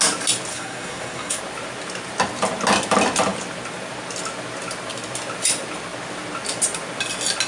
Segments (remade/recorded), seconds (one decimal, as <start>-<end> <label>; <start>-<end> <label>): 0.0-0.5 recorded; 0.5-1.4 remade; 1.4-7.5 recorded